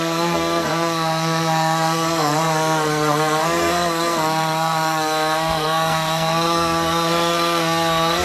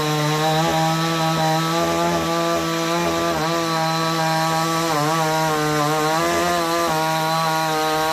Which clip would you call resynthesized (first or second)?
first